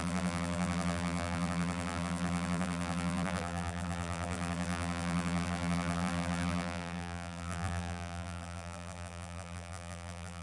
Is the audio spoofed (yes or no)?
yes